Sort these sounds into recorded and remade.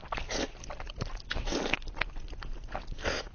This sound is recorded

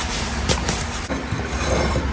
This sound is remade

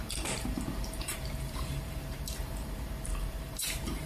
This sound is remade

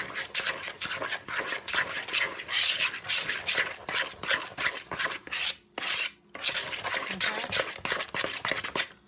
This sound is recorded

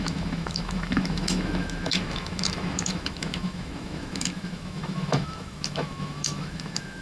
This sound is remade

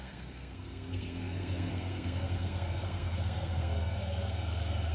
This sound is remade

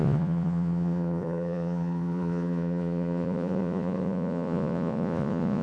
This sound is remade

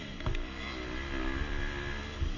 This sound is recorded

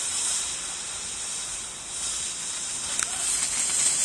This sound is recorded